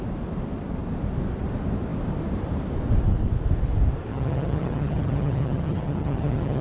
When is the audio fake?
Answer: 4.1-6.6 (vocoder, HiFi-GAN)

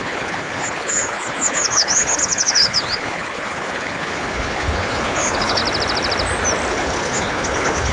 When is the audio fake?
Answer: 0.0-5.6 (codec, HILCodec); 6.7-7.9

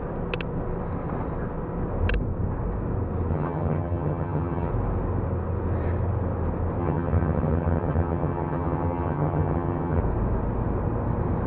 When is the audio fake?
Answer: 3.3-4.7 (vocoder, HiFi-GAN); 6.8-10.0

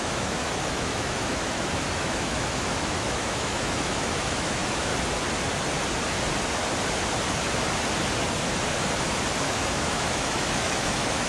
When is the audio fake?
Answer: 0.0-4.9 (autoencoder, DAC-VAE); 9.4-11.3

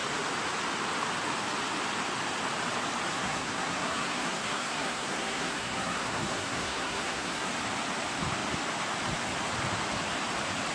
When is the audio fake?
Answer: 3.1-7.5 (codec, SNAC)

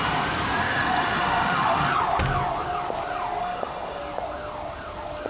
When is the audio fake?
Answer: 0.6-1.9 (autoencoder, DAC-VAE); 3.4-4.0

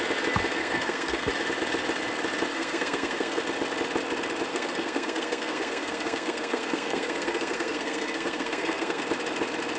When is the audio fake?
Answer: 0.6-1.3 (codec, SNAC); 2.5-3.4; 4.5-9.0

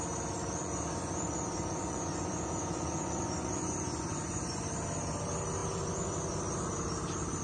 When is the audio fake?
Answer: 0.6-4.6 (vocoder, Vocos)